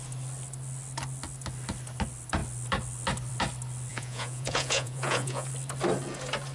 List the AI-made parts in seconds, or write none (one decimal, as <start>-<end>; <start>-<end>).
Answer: 3.9-5.5